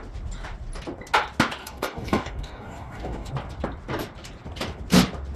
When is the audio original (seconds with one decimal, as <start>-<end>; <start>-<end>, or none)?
0.0-1.6; 3.3-5.4